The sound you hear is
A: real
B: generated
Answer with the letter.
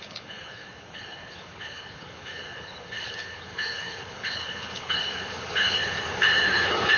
B